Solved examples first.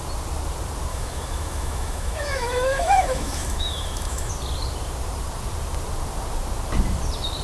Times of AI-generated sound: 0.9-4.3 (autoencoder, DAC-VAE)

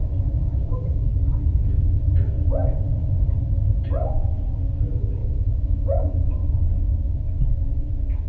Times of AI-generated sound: 0.4-1.1 (autoencoder, DAC-VAE); 5.2-6.5

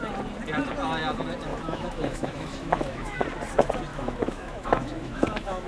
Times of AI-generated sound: 1.5-3.2 (autoencoder, DAC-VAE); 3.9-5.7

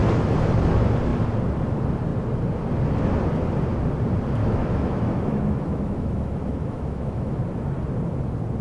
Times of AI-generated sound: 4.4-7.4 (autoencoder, DAC-VAE)

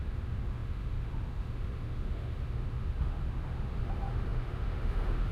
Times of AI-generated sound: 0.0-5.3 (autoencoder, DAC-VAE)

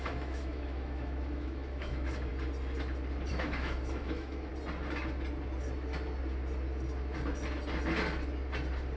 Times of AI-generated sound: 0.0-2.3 (autoencoder, DAC-VAE); 3.3-4.5

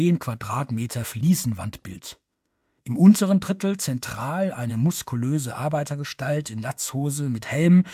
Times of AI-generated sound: 0.0-1.2 (autoencoder, DAC-VAE); 2.0-4.1; 4.7-7.9